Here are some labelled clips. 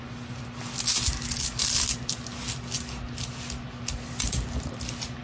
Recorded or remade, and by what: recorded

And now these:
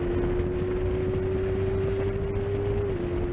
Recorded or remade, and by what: recorded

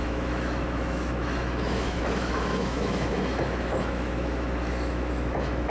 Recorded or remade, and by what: remade, autoencoder, DAC-VAE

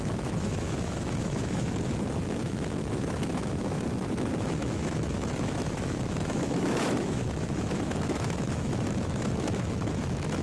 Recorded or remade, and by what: remade, autoencoder, DAC-VAE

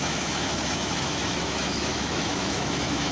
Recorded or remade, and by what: remade, autoencoder, DAC-VAE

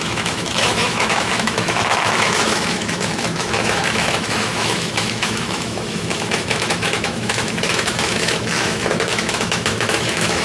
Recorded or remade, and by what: remade, autoencoder, DAC-VAE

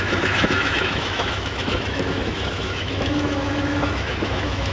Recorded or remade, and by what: remade, autoencoder, DAC-VAE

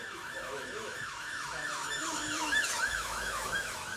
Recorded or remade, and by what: remade, autoencoder, DAC-VAE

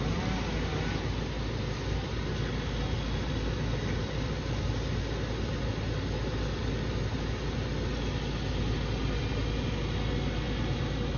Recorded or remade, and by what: recorded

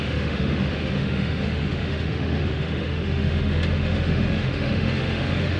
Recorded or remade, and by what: remade, autoencoder, DAC-VAE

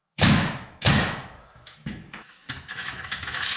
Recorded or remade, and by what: remade, autoencoder, DAC-VAE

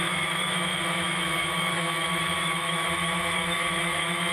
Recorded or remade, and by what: remade, autoencoder, DAC-VAE